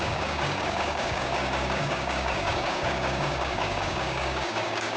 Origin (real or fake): fake